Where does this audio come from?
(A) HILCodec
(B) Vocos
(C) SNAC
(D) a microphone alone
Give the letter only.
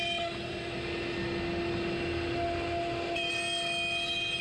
D